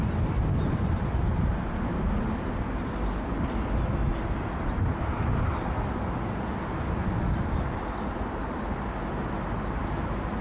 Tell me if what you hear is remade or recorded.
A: recorded